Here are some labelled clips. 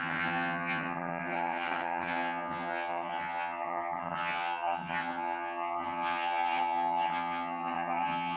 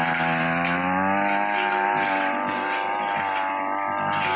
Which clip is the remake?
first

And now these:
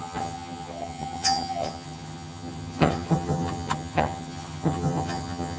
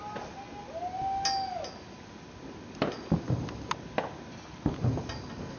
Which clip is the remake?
first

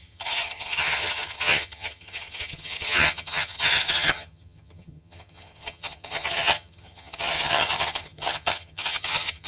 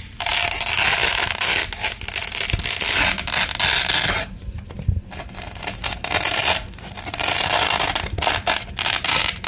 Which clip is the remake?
first